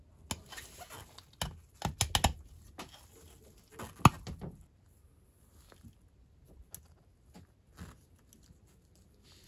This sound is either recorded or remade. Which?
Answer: recorded